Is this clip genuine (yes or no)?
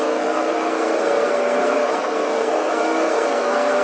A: no